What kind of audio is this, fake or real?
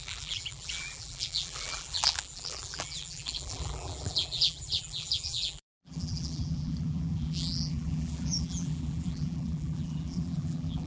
fake